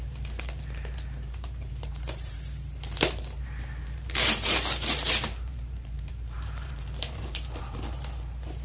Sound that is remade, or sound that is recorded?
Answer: remade